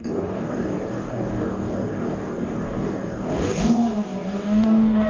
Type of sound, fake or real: fake